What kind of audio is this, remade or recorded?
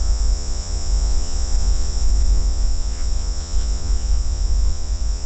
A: remade